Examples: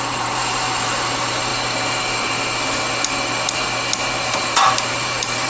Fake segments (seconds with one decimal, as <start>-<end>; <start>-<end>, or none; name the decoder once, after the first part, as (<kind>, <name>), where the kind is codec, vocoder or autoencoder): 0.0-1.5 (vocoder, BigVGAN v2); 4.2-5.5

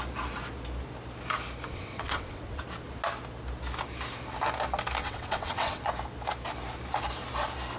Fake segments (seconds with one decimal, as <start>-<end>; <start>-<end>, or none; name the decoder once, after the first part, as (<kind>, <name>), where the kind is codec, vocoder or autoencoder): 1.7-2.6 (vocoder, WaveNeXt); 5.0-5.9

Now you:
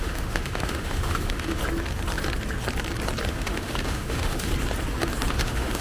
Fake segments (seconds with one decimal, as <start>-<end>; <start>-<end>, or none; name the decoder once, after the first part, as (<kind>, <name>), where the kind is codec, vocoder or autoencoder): 0.0-1.6 (autoencoder, DAC-VAE); 3.3-4.5; 5.3-5.8

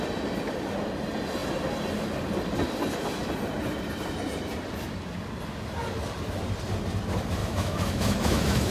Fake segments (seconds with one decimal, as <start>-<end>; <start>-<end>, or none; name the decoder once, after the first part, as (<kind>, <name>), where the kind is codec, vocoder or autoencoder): 7.4-8.7 (autoencoder, DAC-VAE)

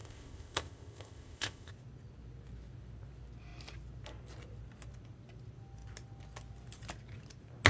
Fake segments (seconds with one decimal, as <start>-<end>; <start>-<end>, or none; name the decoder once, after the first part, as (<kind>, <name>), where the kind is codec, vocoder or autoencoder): 0.0-1.7 (codec, ZipCodec)

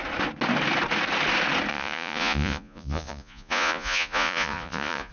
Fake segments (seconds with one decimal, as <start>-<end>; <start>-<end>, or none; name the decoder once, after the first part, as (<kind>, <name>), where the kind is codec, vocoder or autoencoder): 1.7-5.1 (vocoder, Vocos)